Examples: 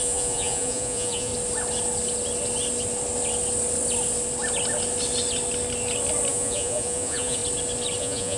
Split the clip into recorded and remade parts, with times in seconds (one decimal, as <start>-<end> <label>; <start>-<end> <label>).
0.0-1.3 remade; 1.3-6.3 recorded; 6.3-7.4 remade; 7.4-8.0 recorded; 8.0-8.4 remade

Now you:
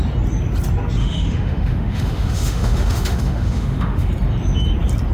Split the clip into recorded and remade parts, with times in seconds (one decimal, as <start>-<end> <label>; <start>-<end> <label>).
0.0-1.0 recorded; 1.0-4.1 remade; 4.1-5.1 recorded

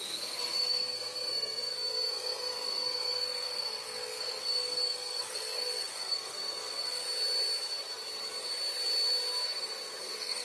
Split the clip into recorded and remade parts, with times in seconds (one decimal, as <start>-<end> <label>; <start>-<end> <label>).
0.0-7.0 remade; 7.0-10.0 recorded; 10.0-10.4 remade